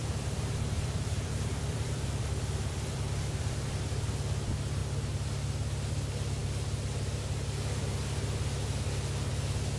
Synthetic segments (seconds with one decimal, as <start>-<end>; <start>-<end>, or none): 0.0-4.1